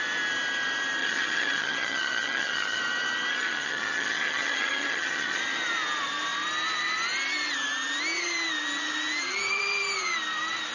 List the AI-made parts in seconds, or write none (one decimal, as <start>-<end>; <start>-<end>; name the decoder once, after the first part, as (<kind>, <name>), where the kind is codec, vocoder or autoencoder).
1.0-2.8 (vocoder, HiFi-GAN); 3.3-5.4